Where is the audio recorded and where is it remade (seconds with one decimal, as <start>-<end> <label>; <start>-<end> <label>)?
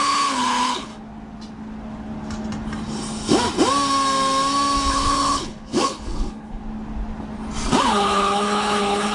0.0-0.9 remade; 0.9-4.9 recorded; 4.9-6.6 remade; 6.6-7.8 recorded; 7.8-9.1 remade